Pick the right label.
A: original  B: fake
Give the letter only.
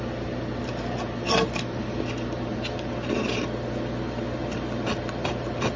A